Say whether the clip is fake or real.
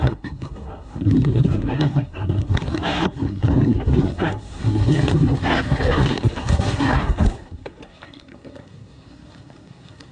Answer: fake